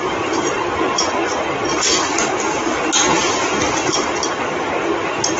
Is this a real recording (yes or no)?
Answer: yes